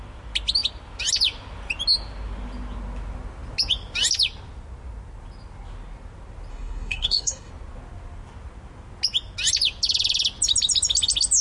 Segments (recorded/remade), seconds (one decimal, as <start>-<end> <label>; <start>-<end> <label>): 0.0-6.5 recorded; 6.5-7.5 remade; 7.5-11.4 recorded